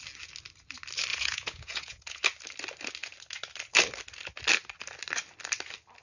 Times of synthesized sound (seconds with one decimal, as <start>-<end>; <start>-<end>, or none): 1.1-2.2